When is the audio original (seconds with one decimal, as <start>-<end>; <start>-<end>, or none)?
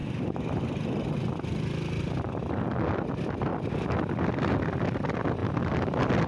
0.0-6.3